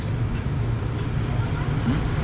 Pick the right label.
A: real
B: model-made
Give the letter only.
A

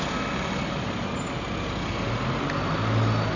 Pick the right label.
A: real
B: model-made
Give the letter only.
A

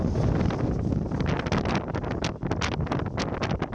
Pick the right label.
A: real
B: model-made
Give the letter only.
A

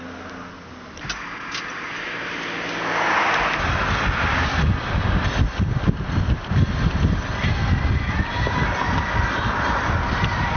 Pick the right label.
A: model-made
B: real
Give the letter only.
B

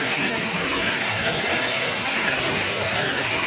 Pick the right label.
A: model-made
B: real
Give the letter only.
A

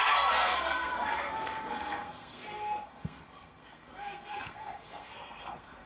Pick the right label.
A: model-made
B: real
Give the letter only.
A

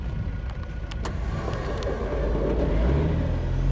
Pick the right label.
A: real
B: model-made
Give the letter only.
A